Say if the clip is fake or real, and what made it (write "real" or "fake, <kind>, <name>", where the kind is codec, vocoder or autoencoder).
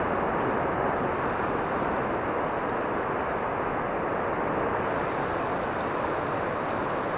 real